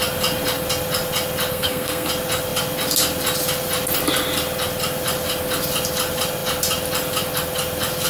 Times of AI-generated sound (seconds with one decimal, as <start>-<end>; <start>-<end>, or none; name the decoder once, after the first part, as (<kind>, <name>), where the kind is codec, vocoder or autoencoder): 1.5-2.1 (codec, SNAC)